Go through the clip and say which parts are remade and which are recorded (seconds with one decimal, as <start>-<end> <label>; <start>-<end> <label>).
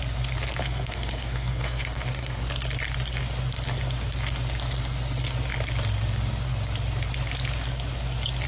0.0-0.6 recorded; 0.6-2.4 remade; 2.4-8.5 recorded